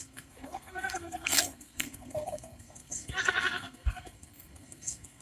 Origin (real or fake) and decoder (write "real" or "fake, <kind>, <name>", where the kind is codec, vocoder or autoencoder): fake, codec, SNAC